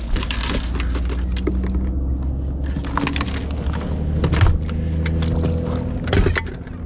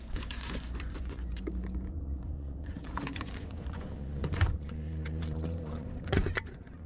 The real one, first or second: first